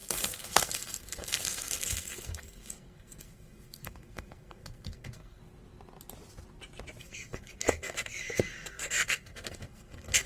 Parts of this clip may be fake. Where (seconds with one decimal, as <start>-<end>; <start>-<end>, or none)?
0.0-5.4; 7.0-10.3